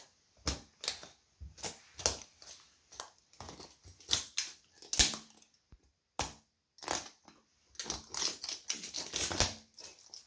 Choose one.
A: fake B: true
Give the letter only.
B